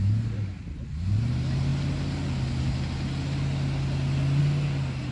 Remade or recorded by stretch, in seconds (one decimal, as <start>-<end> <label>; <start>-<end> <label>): 0.0-5.1 recorded